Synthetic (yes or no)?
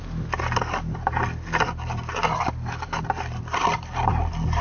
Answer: no